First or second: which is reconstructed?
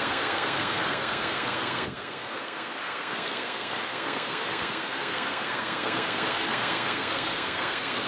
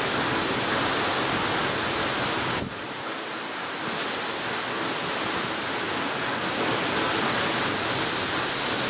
first